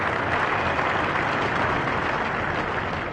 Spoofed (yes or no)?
no